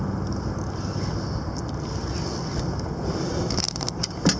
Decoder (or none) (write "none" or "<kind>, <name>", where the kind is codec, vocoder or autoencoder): none